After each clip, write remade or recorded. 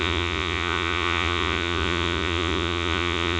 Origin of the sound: remade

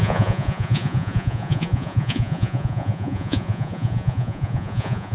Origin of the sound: remade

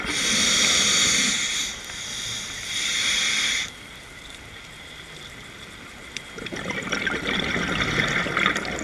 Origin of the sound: recorded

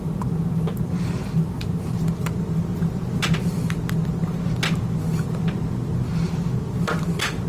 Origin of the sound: recorded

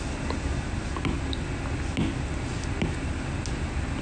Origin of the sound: recorded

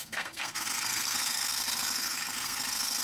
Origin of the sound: remade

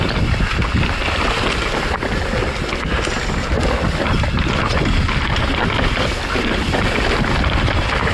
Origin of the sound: recorded